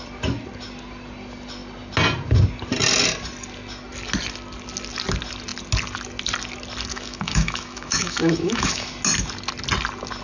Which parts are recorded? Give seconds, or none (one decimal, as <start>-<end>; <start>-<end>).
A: 0.0-6.9; 8.9-10.2